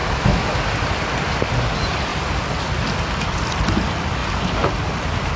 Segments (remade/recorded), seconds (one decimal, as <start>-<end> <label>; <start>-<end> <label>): 0.0-0.6 remade; 0.6-5.4 recorded